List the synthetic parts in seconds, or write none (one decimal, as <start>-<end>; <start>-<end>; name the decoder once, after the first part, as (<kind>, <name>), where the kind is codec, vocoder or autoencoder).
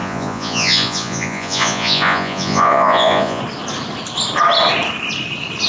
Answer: 0.0-3.4 (vocoder, Vocos)